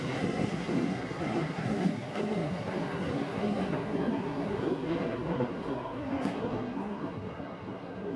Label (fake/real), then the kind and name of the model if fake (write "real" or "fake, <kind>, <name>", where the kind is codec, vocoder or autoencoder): fake, codec, SNAC